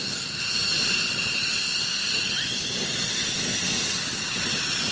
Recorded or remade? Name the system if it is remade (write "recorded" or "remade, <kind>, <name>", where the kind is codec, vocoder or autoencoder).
recorded